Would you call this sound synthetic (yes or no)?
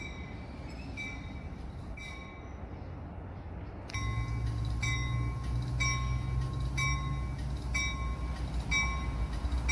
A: no